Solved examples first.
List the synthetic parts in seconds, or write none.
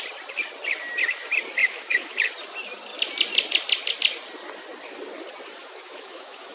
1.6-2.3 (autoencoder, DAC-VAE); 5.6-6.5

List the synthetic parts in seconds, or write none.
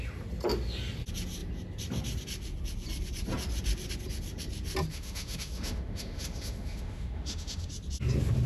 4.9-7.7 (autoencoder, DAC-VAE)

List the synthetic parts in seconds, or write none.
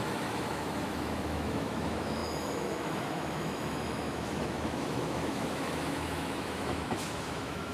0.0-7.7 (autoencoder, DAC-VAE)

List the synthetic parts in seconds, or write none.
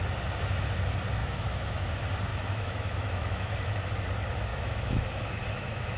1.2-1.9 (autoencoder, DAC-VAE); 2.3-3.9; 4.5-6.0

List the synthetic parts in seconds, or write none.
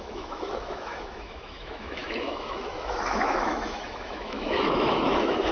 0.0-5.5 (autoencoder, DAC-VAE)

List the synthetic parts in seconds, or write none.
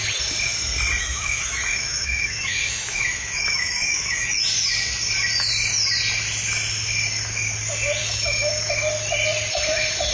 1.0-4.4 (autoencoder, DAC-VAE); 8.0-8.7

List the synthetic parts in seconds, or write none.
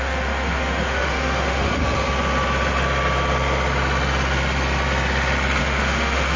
0.0-1.8 (autoencoder, DAC-VAE); 5.6-6.4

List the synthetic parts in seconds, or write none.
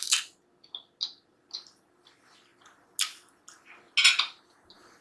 none